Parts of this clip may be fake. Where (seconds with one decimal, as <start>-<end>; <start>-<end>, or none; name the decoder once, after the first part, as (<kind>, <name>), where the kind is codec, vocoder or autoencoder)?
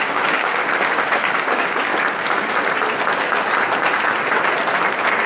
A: 0.0-0.6 (codec, DAC); 1.2-1.9